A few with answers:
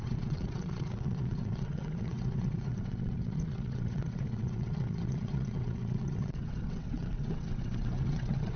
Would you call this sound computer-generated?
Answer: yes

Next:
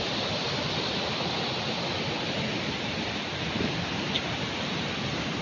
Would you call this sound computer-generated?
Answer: no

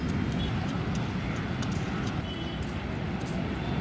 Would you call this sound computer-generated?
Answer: no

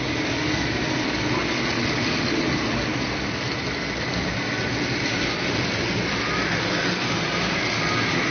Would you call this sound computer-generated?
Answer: no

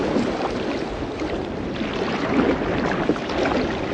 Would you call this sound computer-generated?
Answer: no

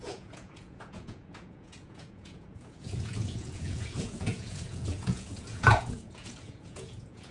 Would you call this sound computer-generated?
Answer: yes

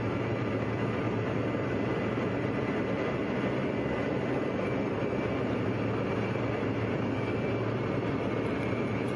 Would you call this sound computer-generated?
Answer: yes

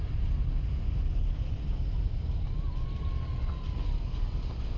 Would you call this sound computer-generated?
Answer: no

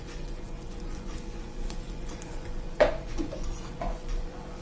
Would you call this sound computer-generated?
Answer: yes